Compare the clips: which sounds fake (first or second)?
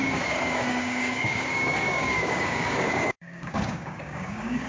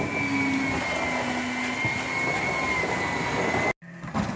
first